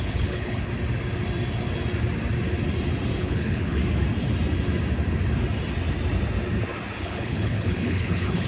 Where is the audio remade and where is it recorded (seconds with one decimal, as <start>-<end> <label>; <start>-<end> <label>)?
0.0-0.7 remade; 0.7-3.2 recorded; 3.2-3.8 remade; 3.8-7.0 recorded; 7.0-8.5 remade